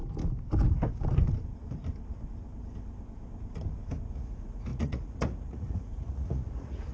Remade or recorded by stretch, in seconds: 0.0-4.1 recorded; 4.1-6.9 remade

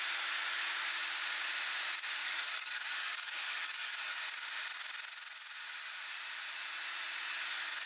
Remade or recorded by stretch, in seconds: 0.0-2.2 recorded; 2.2-4.2 remade; 4.2-7.9 recorded